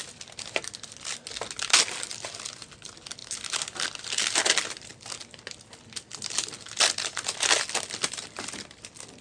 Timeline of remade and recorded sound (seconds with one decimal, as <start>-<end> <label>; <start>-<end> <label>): 0.0-9.2 recorded